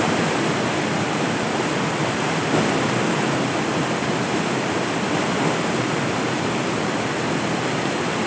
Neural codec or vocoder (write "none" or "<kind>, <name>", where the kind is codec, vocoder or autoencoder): vocoder, BigVGAN v2